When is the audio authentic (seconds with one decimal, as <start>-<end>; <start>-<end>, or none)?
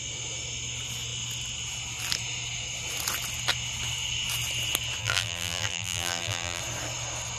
0.0-5.0; 6.6-7.4